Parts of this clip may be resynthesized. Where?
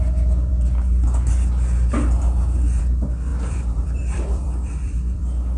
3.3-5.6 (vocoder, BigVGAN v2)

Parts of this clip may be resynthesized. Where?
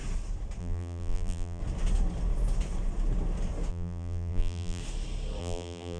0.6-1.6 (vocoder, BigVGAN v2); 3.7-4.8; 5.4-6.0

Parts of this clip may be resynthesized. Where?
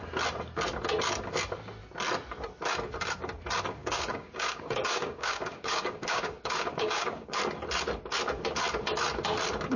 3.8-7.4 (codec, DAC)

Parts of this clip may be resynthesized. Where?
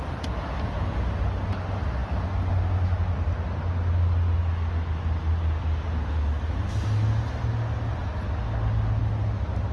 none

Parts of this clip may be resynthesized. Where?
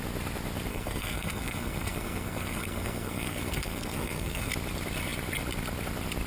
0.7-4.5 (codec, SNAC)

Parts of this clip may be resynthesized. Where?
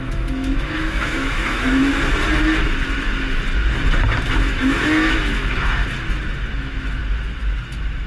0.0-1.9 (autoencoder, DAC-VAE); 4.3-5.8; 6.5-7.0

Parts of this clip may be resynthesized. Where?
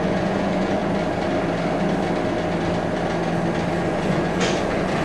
0.0-0.8 (vocoder, Vocos); 3.8-5.0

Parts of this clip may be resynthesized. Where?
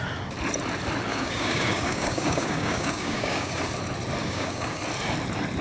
1.1-3.6 (codec, DAC); 4.2-4.8